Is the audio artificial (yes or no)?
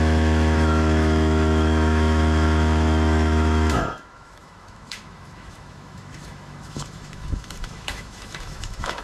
yes